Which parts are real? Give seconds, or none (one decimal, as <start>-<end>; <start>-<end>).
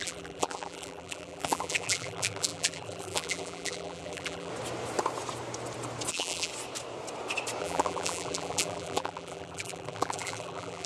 4.5-6.1; 6.5-7.6